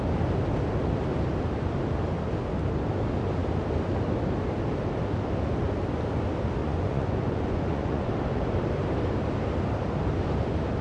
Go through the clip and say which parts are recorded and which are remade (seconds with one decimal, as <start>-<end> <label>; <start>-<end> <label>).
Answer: 0.0-6.6 recorded; 6.6-8.1 remade; 8.1-10.8 recorded